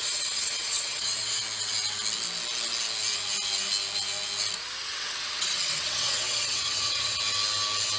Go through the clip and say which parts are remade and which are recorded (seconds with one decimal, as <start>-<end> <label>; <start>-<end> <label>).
0.0-1.4 remade; 1.4-4.8 recorded; 4.8-7.2 remade; 7.2-8.0 recorded